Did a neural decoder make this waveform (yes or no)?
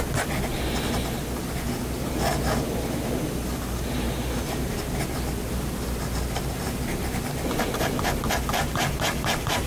no